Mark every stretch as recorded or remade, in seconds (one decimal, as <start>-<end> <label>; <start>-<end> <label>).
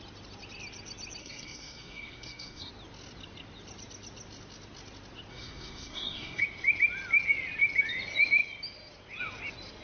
0.0-1.2 recorded; 1.2-2.7 remade; 2.7-5.3 recorded; 5.3-6.4 remade; 6.4-9.8 recorded